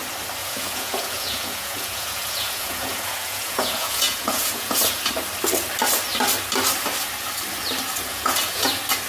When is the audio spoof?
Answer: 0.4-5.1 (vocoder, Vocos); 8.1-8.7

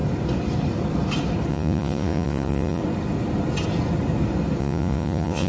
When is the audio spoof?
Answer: 1.5-2.8 (vocoder, Vocos); 4.6-5.5